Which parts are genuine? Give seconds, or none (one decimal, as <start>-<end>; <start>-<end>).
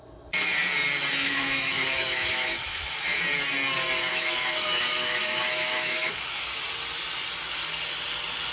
0.0-1.2; 2.9-4.1; 6.4-8.5